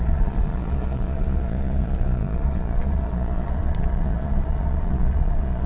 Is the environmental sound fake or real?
fake